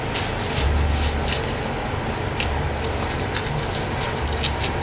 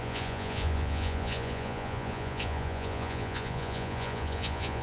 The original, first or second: first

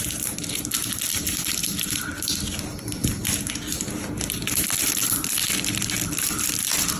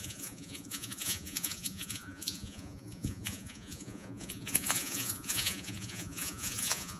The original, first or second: first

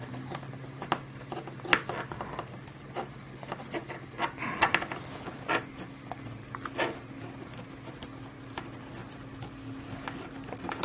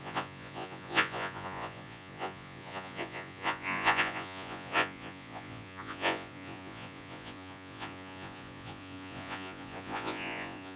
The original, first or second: first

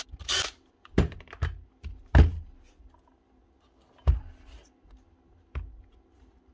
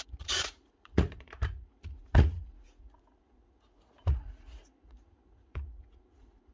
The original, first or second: first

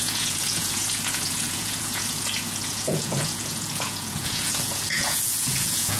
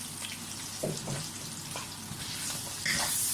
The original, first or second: second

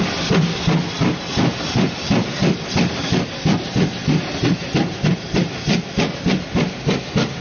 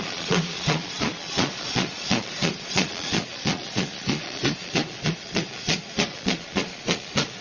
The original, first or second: first